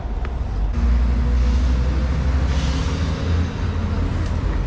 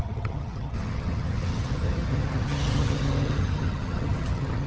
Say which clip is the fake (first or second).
second